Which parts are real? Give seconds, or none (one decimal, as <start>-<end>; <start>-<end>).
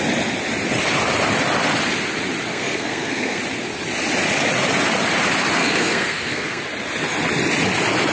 0.0-2.5; 3.4-5.6; 6.6-8.1